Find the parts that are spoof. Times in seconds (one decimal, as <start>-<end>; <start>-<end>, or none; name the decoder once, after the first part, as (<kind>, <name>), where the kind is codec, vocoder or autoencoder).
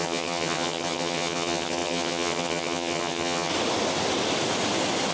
0.0-3.5 (vocoder, HiFi-GAN)